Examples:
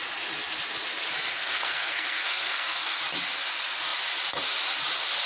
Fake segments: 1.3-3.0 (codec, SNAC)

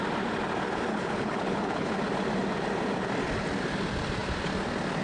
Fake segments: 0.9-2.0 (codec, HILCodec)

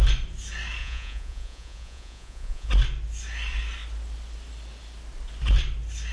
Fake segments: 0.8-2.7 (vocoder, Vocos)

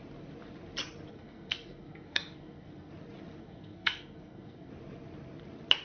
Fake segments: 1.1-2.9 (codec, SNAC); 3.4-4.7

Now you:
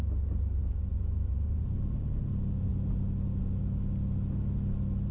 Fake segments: none

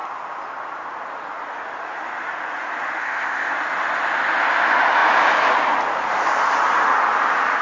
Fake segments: 3.0-3.5 (codec, ZipCodec)